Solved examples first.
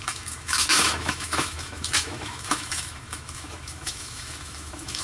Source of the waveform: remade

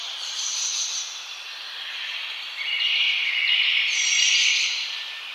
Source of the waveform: remade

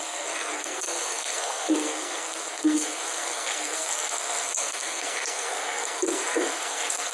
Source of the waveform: remade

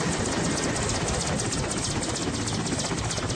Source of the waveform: recorded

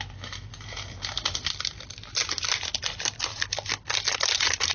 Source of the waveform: recorded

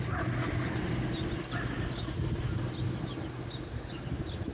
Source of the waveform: recorded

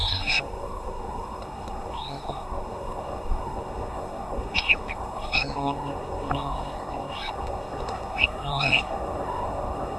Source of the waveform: remade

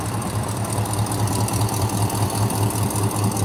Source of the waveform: remade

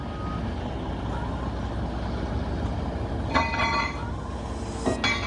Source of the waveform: recorded